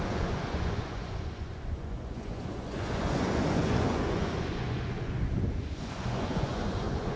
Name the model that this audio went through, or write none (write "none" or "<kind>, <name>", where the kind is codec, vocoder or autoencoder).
vocoder, Vocos